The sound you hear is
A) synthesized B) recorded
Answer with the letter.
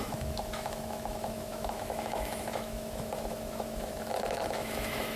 A